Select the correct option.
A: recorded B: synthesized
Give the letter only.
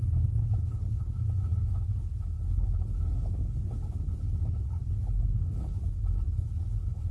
B